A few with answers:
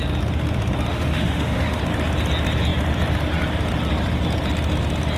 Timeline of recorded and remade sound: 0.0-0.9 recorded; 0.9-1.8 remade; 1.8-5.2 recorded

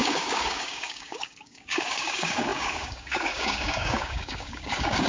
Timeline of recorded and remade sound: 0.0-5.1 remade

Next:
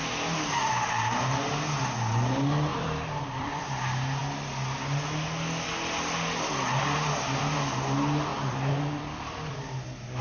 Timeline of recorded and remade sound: 0.0-2.7 recorded; 2.7-3.6 remade; 3.6-8.3 recorded; 8.3-9.6 remade; 9.6-10.2 recorded